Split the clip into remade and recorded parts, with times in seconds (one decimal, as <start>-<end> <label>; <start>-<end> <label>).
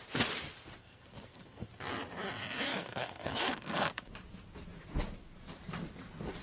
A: 0.0-0.8 recorded; 0.8-1.7 remade; 1.7-2.7 recorded; 2.7-4.1 remade; 4.1-6.4 recorded